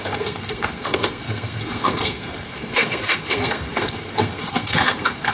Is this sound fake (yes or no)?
yes